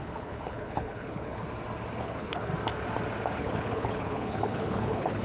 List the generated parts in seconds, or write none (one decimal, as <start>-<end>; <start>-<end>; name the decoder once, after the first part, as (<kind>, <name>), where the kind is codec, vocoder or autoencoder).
0.0-1.4 (codec, HILCodec); 2.0-2.5; 3.4-5.2